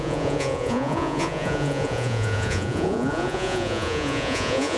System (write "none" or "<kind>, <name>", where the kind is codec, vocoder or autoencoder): vocoder, Vocos